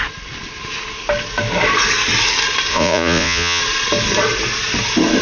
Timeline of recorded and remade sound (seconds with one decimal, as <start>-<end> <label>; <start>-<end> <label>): 0.0-2.7 recorded; 2.7-3.6 remade; 3.6-5.2 recorded